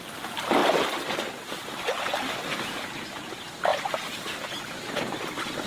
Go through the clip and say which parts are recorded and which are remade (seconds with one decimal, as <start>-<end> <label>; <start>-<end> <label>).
0.0-3.7 recorded; 3.7-4.6 remade; 4.6-5.7 recorded